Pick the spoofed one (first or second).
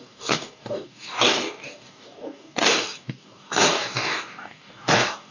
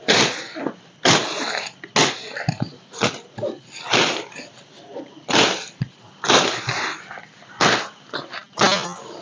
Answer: first